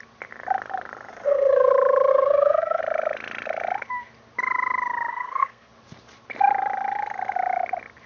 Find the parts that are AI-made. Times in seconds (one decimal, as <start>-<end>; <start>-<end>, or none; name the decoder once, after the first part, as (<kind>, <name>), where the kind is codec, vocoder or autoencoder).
1.1-1.7 (codec, SNAC); 2.1-2.8; 5.1-5.7